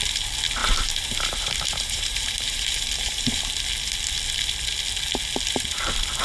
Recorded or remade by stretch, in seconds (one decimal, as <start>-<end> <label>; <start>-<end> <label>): 0.0-0.6 recorded; 0.6-3.6 remade; 3.6-6.2 recorded

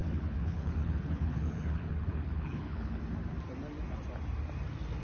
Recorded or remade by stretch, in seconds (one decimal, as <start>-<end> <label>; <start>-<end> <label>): 0.0-3.0 remade; 3.0-5.0 recorded